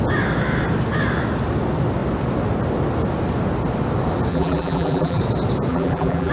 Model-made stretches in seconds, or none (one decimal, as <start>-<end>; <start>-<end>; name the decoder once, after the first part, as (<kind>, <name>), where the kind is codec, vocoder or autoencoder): 4.3-5.2 (vocoder, BigVGAN v2); 5.7-6.3